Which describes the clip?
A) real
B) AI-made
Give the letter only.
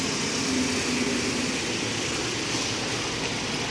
A